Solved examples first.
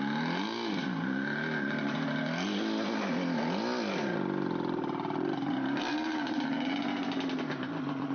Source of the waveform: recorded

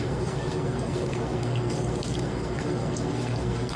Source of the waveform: remade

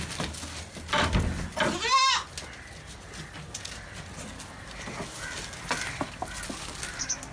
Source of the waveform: recorded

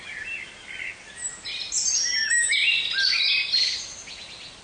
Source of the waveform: recorded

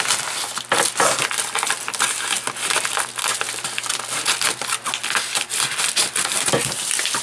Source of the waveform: recorded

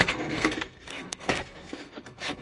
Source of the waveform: remade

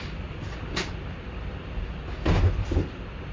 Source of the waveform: recorded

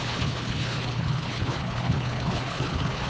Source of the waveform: remade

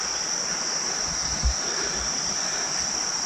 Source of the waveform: recorded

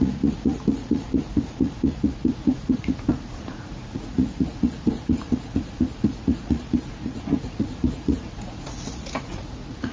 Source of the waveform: remade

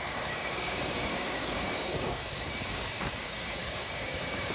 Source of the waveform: remade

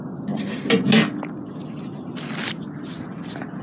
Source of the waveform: recorded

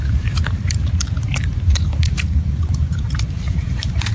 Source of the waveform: remade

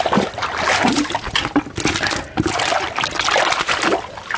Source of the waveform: recorded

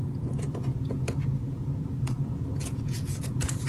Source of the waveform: remade